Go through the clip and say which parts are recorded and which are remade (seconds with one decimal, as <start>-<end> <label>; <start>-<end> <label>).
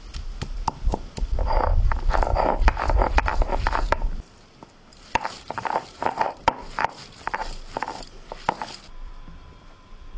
0.0-4.9 recorded; 4.9-6.7 remade; 6.7-10.2 recorded